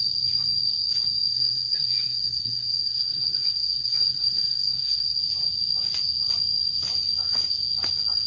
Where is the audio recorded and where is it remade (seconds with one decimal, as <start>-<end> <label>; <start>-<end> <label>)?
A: 0.0-1.3 recorded; 1.3-5.2 remade; 5.2-8.3 recorded